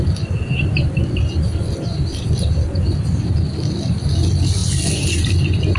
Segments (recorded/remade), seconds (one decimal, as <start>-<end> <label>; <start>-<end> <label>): 0.0-5.8 recorded